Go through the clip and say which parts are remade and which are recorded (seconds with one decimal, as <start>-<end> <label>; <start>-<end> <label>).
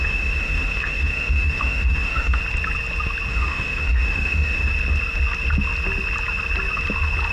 0.0-2.4 remade; 2.4-3.3 recorded; 3.3-4.7 remade; 4.7-7.3 recorded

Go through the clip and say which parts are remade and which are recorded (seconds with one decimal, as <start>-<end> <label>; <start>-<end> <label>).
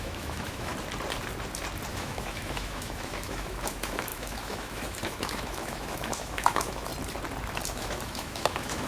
0.0-0.7 remade; 0.7-1.9 recorded; 1.9-6.9 remade; 6.9-7.7 recorded; 7.7-8.9 remade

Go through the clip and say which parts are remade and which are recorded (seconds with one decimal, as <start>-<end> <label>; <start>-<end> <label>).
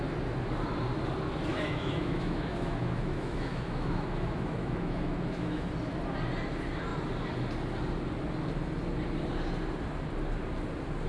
0.0-1.5 recorded; 1.5-5.7 remade; 5.7-11.1 recorded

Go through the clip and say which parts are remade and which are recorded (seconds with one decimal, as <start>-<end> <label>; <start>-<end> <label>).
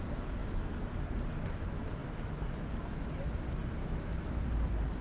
0.0-3.8 recorded; 3.8-4.4 remade; 4.4-5.0 recorded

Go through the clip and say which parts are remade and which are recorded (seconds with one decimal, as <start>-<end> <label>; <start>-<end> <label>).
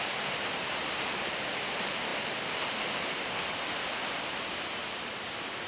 0.0-5.7 recorded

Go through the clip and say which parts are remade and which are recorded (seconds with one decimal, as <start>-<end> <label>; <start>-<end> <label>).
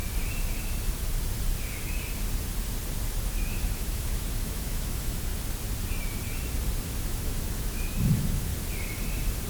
0.0-3.2 recorded; 3.2-5.3 remade; 5.3-6.8 recorded; 6.8-8.5 remade; 8.5-9.5 recorded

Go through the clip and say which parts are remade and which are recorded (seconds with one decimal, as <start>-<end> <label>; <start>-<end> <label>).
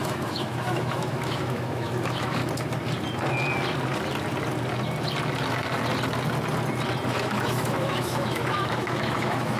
0.0-2.4 remade; 2.4-7.1 recorded; 7.1-9.6 remade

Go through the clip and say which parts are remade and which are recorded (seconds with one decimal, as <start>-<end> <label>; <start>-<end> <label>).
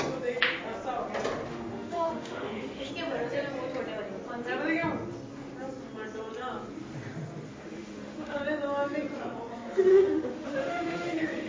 0.0-1.5 recorded; 1.5-2.9 remade; 2.9-7.5 recorded; 7.5-8.4 remade; 8.4-9.9 recorded; 9.9-11.5 remade